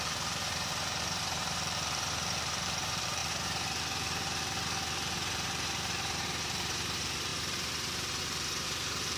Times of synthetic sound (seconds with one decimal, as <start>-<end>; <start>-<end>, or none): 0.0-3.2; 5.3-9.2